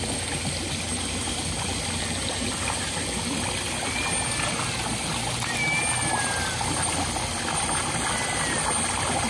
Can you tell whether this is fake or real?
real